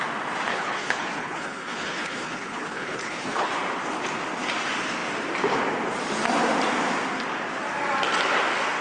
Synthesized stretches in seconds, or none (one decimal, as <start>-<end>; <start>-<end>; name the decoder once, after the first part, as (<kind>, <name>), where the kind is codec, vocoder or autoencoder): 0.5-3.5 (codec, HILCodec)